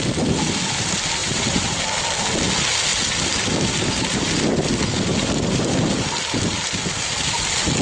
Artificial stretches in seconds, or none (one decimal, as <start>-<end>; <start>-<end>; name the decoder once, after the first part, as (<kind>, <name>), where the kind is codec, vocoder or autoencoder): 1.2-1.8 (vocoder, WaveNeXt)